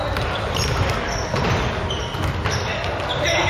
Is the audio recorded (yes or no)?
yes